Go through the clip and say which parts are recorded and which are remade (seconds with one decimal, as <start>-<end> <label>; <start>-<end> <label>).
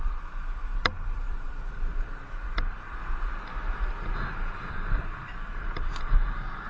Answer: 0.0-3.0 remade; 3.0-4.7 recorded; 4.7-6.7 remade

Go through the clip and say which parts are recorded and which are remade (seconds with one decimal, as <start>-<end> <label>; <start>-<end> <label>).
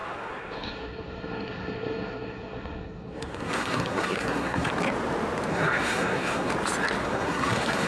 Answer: 0.0-4.7 remade; 4.7-5.5 recorded; 5.5-6.5 remade; 6.5-7.0 recorded; 7.0-7.9 remade